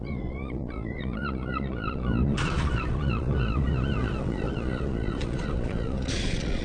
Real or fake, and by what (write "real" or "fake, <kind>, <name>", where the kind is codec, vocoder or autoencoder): fake, vocoder, Vocos